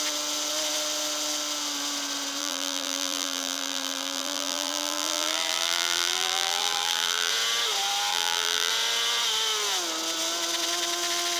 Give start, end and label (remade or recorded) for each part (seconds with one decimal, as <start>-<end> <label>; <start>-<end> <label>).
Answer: 0.0-2.4 recorded; 2.4-7.3 remade; 7.3-8.1 recorded; 8.1-8.7 remade; 8.7-11.4 recorded